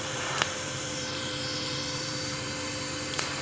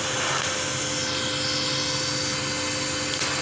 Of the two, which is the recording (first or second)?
second